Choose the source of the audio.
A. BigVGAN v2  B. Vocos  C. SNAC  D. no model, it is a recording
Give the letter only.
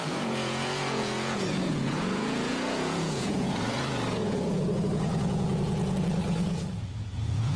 B